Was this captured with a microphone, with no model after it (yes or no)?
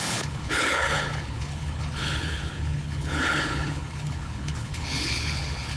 no